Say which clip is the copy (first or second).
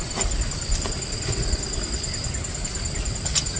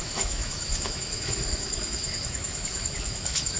second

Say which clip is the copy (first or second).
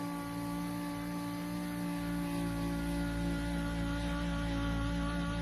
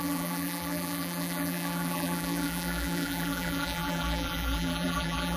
second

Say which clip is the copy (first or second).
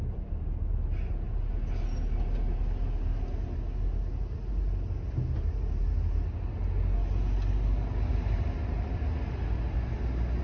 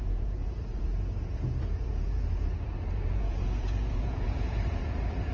second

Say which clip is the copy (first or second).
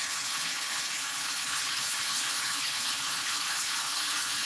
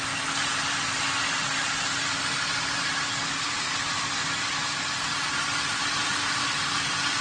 first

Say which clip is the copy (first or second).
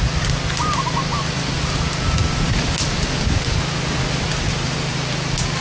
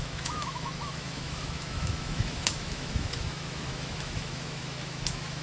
second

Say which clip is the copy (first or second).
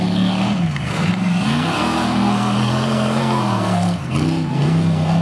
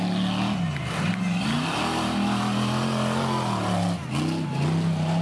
first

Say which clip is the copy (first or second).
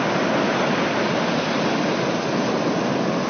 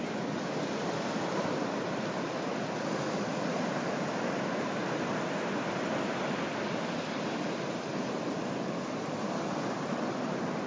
second